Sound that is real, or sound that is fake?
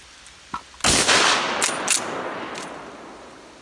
real